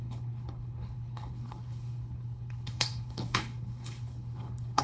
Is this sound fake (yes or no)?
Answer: yes